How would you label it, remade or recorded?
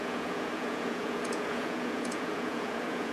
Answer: remade